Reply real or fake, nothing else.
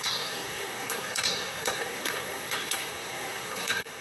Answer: fake